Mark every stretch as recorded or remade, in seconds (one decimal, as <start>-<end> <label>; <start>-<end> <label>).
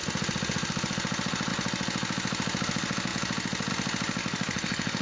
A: 0.0-4.2 recorded; 4.2-5.0 remade